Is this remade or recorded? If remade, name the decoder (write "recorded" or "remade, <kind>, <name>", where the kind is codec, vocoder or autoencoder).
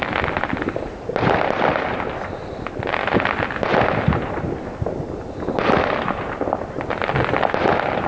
recorded